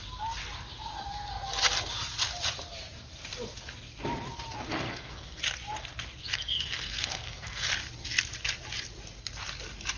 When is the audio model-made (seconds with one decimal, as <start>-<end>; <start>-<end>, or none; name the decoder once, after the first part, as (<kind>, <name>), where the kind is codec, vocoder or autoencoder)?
4.7-5.4 (codec, SNAC); 6.2-7.7